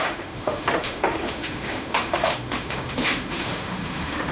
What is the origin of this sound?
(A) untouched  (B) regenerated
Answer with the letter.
B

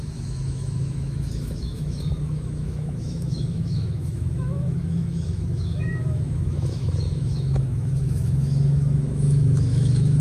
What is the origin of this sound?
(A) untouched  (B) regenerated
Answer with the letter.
B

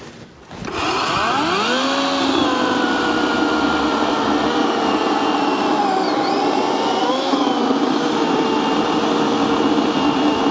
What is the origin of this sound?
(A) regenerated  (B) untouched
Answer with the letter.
B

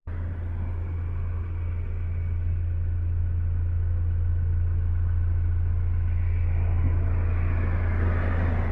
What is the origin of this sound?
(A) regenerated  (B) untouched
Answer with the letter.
B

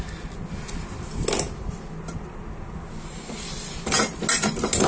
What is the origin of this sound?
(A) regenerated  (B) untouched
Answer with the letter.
B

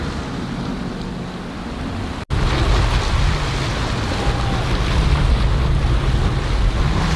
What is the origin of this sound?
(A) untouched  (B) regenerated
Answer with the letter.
A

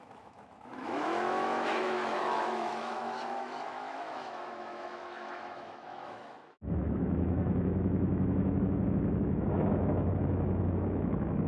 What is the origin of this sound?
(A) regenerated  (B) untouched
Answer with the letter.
A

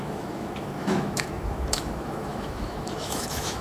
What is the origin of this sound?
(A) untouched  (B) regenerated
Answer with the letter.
B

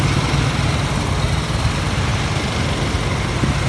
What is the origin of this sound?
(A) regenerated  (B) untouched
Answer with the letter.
B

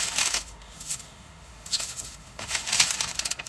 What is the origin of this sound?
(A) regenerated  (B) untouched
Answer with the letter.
A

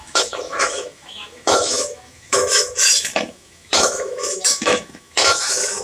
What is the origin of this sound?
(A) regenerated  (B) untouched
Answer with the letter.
A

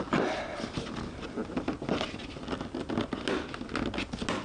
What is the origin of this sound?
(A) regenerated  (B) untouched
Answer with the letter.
B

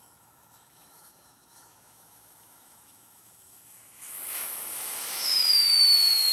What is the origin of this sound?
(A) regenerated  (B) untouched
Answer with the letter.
A